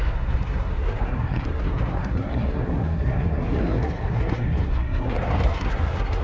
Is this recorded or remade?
remade